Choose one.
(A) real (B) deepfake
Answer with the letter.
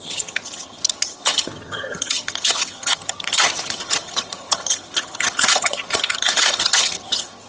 B